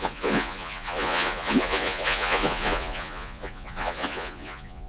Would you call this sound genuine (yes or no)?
no